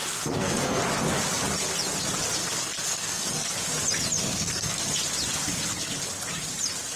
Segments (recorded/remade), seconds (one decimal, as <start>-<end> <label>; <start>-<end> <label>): 0.0-0.8 remade; 0.8-2.4 recorded; 2.4-3.5 remade; 3.5-4.2 recorded; 4.2-4.8 remade; 4.8-7.0 recorded